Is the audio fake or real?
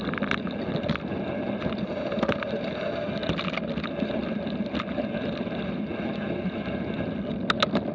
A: real